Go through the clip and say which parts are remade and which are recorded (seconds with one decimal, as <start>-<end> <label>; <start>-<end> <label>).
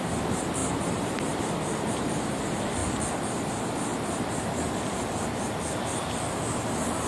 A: 0.0-0.6 recorded; 0.6-1.4 remade; 1.4-3.9 recorded; 3.9-4.8 remade; 4.8-7.1 recorded